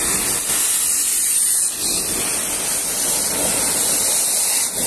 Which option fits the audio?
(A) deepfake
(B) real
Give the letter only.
B